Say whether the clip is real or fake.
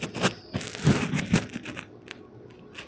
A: real